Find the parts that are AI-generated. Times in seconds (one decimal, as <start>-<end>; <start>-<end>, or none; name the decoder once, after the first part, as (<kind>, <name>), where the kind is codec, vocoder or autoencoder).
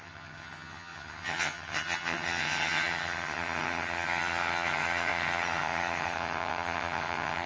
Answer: 0.0-7.5 (vocoder, HiFi-GAN)